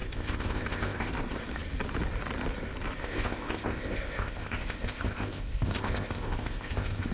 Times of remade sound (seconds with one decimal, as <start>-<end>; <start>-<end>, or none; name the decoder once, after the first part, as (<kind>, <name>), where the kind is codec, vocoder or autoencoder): 0.0-1.1 (codec, ZipCodec); 3.0-7.1